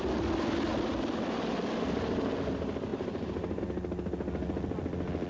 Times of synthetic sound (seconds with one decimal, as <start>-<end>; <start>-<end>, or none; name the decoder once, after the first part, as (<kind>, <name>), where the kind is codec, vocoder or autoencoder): 2.9-3.6 (vocoder, BigVGAN v2)